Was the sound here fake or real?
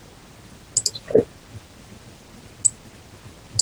real